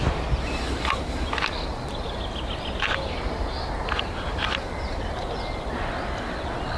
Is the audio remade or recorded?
recorded